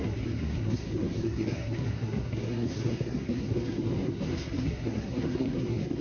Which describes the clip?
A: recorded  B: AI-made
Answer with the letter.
B